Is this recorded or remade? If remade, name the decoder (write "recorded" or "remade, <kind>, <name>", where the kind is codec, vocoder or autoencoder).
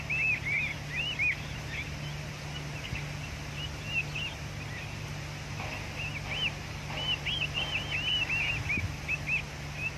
recorded